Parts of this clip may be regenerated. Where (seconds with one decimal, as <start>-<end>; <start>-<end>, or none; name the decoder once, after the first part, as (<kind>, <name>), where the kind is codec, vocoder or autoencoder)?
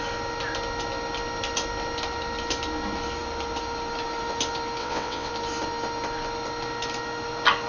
4.8-5.3 (vocoder, WaveNeXt)